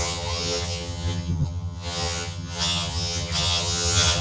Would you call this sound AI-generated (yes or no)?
yes